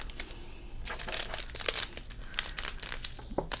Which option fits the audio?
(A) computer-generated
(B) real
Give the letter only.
B